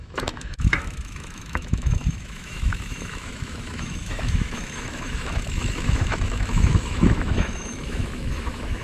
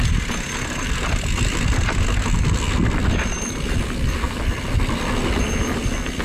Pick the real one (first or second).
second